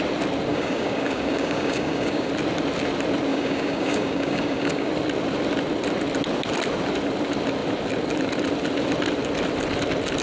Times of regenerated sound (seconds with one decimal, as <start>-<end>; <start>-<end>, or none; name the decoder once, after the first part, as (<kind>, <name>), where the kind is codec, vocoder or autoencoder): 0.5-2.3 (codec, DAC); 3.3-4.9